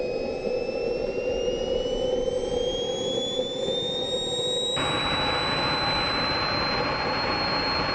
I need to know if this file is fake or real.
real